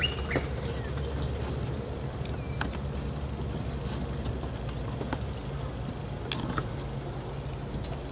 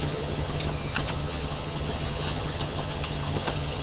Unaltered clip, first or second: first